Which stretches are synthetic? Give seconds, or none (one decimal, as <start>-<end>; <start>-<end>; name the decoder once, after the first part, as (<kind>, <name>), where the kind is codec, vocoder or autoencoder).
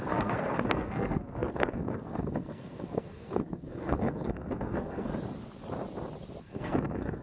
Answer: 0.0-5.1 (codec, SNAC); 6.4-7.2